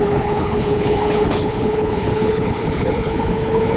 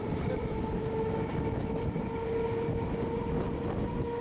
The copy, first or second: first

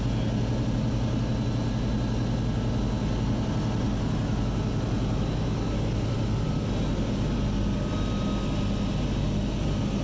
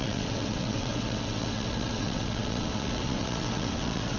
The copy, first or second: second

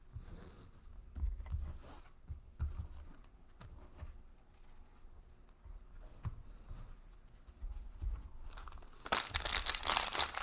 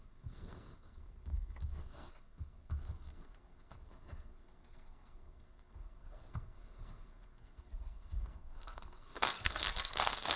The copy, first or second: second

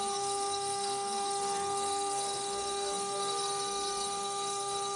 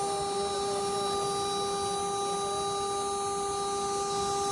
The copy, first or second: first